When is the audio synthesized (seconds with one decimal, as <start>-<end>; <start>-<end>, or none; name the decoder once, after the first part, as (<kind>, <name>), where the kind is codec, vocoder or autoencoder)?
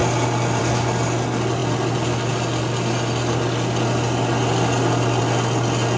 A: none